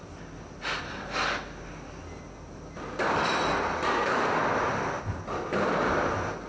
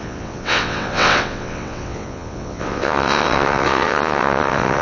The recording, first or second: first